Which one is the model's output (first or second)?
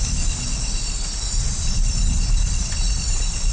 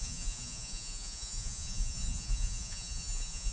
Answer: second